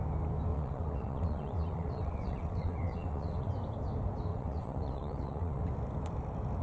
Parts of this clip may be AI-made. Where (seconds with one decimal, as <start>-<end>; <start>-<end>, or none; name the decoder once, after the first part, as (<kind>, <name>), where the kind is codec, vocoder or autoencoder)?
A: 0.5-3.5 (vocoder, WaveNeXt); 4.3-5.7